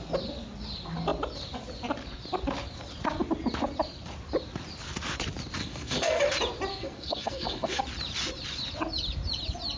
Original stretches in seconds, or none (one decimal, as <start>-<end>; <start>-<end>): 0.0-5.6; 6.2-6.7; 7.8-9.8